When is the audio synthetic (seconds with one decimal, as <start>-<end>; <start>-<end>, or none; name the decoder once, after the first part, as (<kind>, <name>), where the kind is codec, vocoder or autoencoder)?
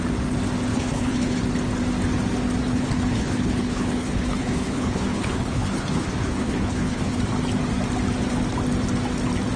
0.7-1.4 (codec, HILCodec); 2.7-7.2